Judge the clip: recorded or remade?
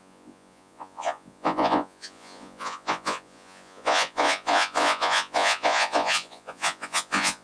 remade